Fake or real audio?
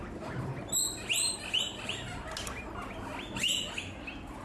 real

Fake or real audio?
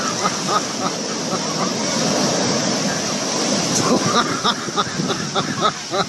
real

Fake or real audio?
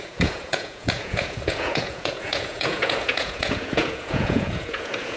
fake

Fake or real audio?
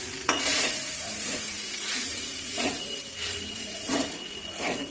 fake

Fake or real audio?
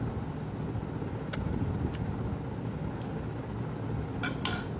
real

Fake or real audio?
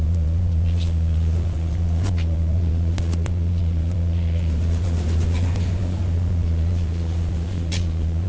fake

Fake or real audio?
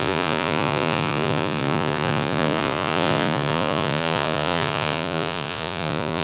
fake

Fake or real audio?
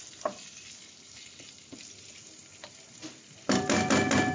real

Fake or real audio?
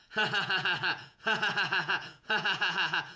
fake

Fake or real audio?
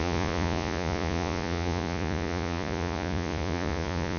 fake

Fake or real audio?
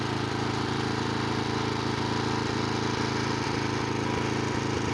real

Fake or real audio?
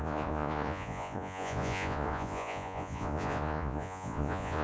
fake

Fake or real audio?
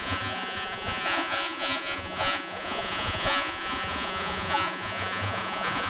fake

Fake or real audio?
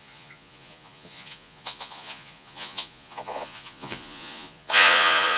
fake